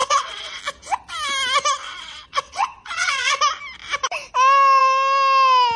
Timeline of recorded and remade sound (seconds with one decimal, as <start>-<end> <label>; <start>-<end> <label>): 0.0-0.6 remade; 0.6-1.8 recorded; 1.8-3.4 remade; 3.4-5.8 recorded